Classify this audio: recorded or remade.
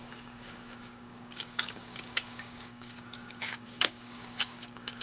remade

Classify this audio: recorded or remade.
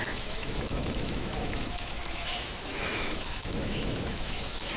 remade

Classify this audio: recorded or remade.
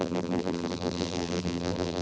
remade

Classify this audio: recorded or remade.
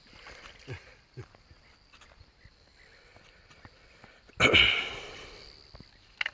recorded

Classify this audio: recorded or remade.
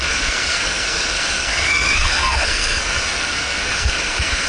remade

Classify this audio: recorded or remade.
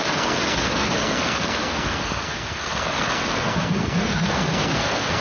remade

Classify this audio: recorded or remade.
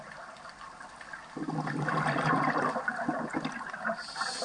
recorded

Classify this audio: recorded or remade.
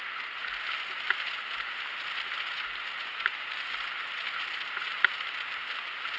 recorded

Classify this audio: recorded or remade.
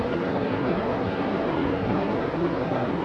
remade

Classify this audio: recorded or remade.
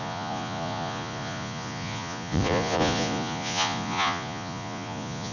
remade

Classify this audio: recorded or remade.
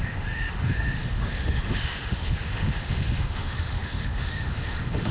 remade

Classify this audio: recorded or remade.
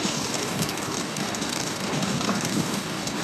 remade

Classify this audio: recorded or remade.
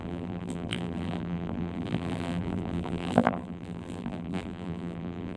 remade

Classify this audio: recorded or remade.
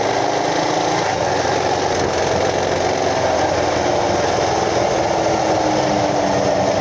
recorded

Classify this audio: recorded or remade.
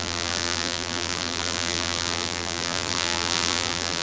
remade